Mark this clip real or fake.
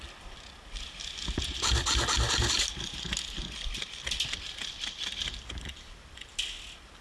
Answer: real